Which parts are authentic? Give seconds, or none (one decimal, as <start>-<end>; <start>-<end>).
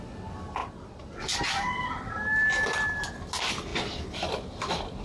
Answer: 0.0-5.0